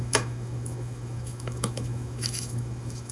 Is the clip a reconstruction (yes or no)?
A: yes